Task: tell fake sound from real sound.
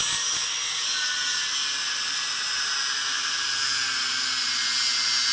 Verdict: real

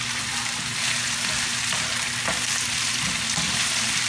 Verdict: real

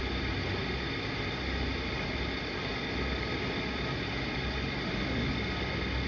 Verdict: real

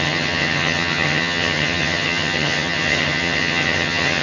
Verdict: fake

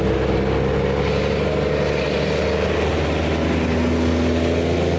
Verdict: real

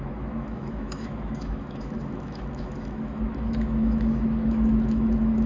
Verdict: fake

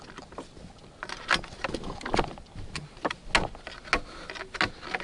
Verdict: real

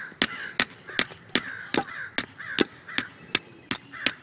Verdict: real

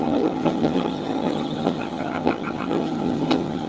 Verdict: fake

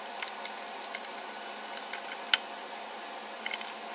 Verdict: real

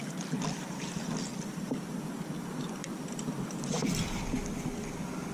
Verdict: real